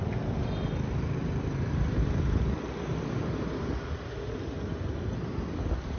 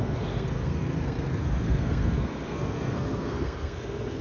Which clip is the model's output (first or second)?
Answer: second